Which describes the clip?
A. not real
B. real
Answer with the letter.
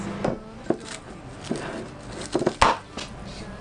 B